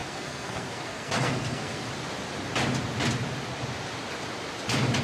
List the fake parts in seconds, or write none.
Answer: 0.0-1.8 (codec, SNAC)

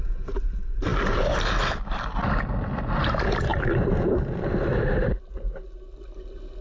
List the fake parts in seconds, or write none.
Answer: 0.9-1.7 (vocoder, BigVGAN v2); 3.5-5.1

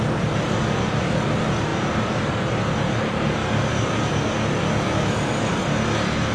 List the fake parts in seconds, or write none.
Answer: none

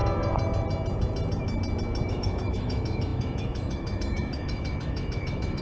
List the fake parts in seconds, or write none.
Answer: 2.1-5.6 (autoencoder, DAC-VAE)

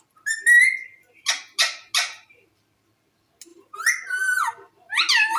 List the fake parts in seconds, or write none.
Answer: none

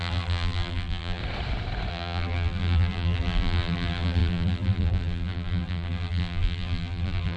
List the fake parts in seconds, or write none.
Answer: 0.0-1.2 (vocoder, BigVGAN v2); 1.9-7.4

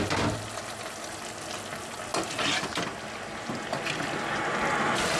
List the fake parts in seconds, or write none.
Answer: none